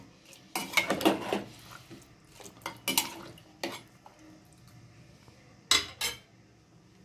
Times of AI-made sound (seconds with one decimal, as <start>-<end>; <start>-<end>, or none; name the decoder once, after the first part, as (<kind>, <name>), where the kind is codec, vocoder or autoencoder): none